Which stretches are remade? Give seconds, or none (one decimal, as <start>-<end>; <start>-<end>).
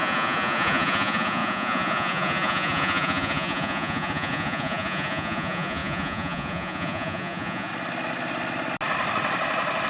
0.0-7.7